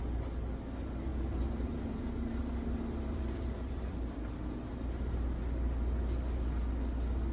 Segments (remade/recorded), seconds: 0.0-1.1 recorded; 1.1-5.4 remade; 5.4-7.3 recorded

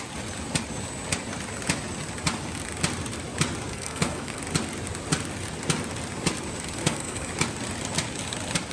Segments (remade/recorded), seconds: 0.0-3.7 recorded; 3.7-4.4 remade; 4.4-6.8 recorded; 6.8-7.3 remade; 7.3-8.7 recorded

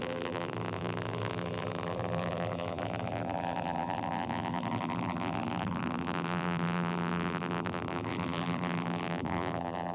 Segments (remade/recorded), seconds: 0.0-9.9 remade

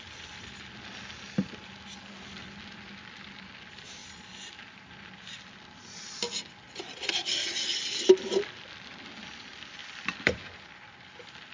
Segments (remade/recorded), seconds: 0.0-9.8 recorded; 9.8-10.7 remade; 10.7-11.5 recorded

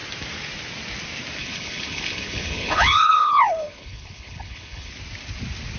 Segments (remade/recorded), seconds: 0.0-1.4 recorded; 1.4-4.9 remade; 4.9-5.8 recorded

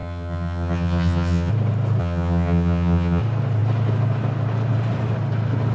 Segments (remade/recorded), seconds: 0.0-1.5 remade; 1.5-2.0 recorded; 2.0-3.2 remade; 3.2-5.7 recorded

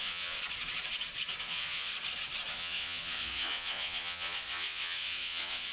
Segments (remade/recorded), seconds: 0.0-0.4 remade; 0.4-1.4 recorded; 1.4-1.9 remade; 1.9-2.5 recorded; 2.5-5.7 remade

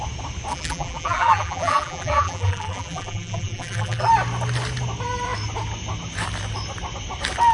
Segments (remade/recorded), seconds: 0.0-0.5 recorded; 0.5-4.1 remade; 4.1-7.5 recorded